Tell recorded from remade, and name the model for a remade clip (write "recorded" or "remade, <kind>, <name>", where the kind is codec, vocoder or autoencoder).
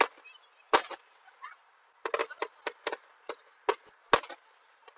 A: recorded